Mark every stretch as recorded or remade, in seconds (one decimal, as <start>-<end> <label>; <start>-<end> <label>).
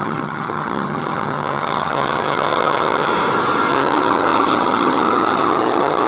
0.0-3.1 remade; 3.1-3.7 recorded; 3.7-6.1 remade